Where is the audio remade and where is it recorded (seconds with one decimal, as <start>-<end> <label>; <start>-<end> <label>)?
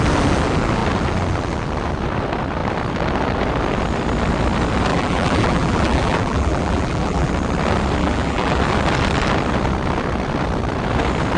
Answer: 0.0-4.9 recorded; 4.9-7.3 remade; 7.3-8.0 recorded; 8.0-8.5 remade; 8.5-11.4 recorded